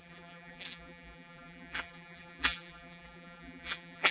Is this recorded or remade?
remade